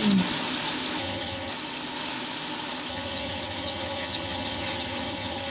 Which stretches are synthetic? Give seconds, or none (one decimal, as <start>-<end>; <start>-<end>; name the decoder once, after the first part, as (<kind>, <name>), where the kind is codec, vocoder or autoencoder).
1.0-1.5 (vocoder, HiFi-GAN); 2.9-5.5